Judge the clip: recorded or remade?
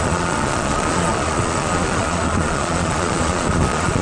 remade